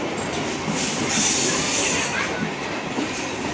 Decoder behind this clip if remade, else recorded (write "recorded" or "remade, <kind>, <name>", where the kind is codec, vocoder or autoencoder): recorded